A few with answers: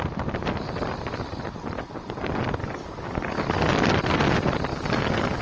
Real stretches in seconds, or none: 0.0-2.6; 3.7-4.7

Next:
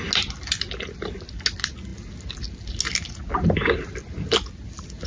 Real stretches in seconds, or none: 0.0-5.1

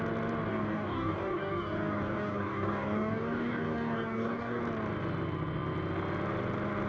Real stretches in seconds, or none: 0.0-0.5; 4.6-6.9

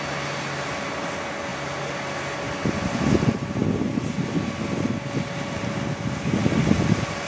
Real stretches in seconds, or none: 0.0-7.3